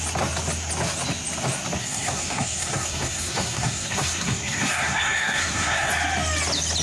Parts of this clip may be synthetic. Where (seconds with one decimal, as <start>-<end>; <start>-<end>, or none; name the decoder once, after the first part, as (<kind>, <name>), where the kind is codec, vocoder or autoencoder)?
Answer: 1.8-5.9 (codec, SNAC)